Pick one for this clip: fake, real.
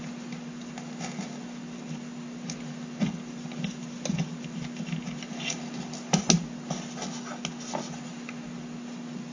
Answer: real